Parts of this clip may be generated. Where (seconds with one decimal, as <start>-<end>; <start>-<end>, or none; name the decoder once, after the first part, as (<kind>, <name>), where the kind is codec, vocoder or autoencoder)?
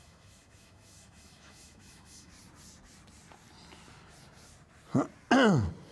0.0-2.3 (autoencoder, DAC-VAE)